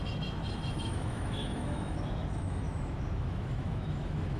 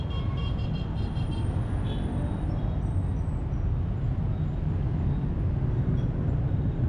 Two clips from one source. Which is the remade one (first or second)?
first